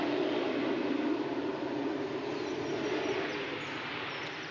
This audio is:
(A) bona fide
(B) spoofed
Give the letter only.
A